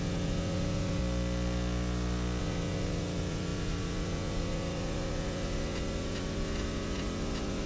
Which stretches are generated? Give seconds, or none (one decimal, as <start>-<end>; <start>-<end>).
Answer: 0.0-1.0; 2.4-7.7

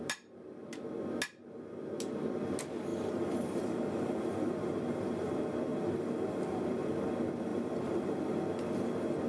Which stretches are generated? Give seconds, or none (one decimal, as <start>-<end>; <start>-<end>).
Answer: 2.9-5.3; 5.7-6.6; 7.5-8.2

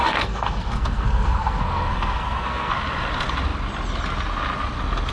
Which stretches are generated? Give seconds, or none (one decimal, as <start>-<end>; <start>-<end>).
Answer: 0.0-2.7

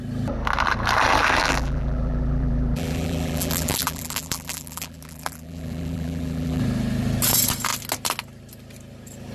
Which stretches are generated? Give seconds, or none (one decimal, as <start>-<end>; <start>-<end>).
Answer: 1.4-6.6